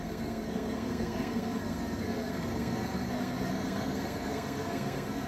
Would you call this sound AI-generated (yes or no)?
yes